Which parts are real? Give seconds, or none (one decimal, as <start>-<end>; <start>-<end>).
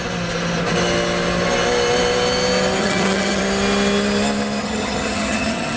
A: 0.0-2.8; 3.4-4.6